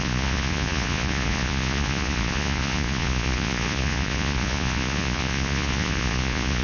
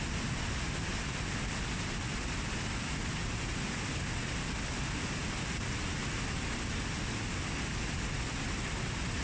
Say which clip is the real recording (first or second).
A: second